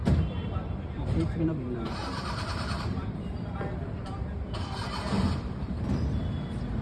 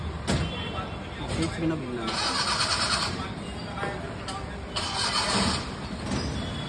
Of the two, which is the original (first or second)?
second